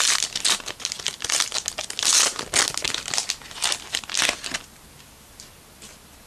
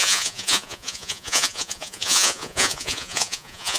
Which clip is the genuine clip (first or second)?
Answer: first